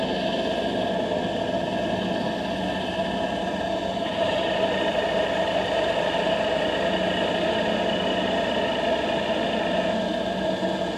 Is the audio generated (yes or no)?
no